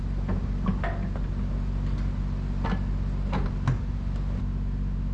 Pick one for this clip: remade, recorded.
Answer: recorded